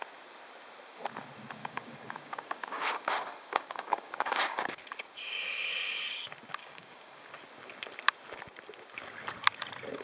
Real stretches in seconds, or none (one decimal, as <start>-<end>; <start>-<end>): 0.0-1.6; 4.8-6.6; 7.4-10.0